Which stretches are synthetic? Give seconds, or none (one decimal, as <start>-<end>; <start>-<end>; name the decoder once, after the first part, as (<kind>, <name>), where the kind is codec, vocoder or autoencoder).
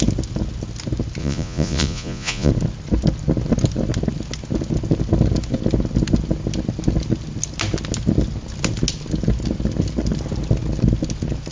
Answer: 1.2-2.5 (vocoder, Vocos)